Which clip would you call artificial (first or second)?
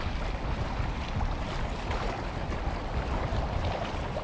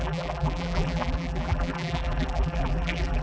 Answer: second